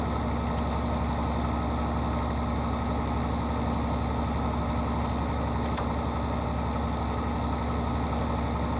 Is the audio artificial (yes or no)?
no